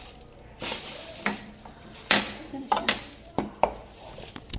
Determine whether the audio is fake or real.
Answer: fake